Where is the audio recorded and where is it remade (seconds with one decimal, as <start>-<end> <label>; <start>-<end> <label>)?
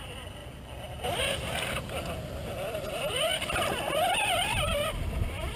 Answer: 0.0-5.6 recorded